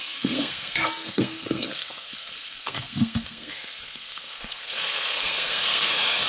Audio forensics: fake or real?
fake